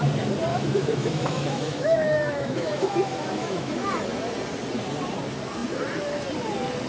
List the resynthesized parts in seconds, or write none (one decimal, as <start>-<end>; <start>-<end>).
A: 0.5-3.7